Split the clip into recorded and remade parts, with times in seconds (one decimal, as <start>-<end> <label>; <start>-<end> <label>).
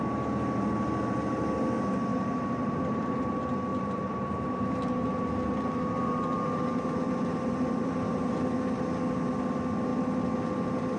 0.0-2.1 recorded; 2.1-3.3 remade; 3.3-3.7 recorded; 3.7-8.3 remade; 8.3-11.0 recorded